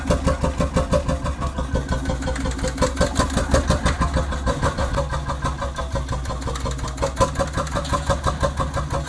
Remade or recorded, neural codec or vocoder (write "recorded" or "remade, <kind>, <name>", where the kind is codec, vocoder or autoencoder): recorded